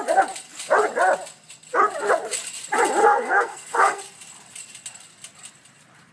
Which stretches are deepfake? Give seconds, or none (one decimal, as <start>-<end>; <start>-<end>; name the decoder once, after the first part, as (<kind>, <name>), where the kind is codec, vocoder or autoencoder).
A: 3.0-4.0 (codec, SNAC)